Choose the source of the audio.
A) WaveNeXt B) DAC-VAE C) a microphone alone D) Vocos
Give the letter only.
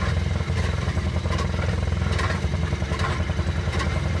C